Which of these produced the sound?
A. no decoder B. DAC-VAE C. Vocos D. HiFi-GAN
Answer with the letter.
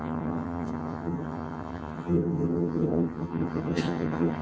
D